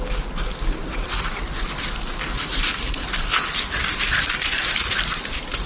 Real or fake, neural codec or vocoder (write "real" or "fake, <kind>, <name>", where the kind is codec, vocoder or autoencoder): real